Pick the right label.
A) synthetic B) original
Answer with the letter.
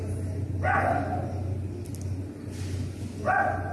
B